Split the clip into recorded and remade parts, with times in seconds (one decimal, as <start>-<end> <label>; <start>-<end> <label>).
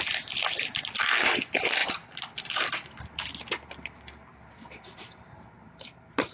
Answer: 0.0-6.3 recorded